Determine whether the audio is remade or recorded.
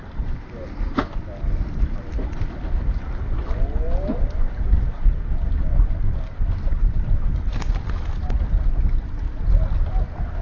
recorded